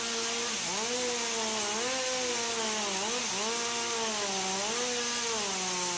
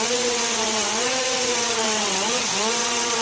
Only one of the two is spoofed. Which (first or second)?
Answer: second